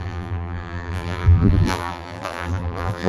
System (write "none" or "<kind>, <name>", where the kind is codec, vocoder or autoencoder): vocoder, BigVGAN v2